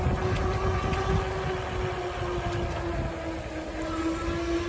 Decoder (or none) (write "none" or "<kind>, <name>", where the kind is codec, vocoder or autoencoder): none